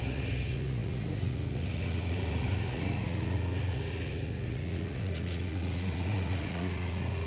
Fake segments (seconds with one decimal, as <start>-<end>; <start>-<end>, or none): 0.0-7.3